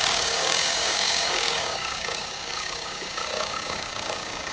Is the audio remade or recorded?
remade